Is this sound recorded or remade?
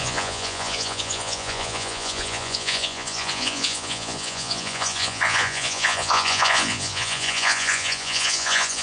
remade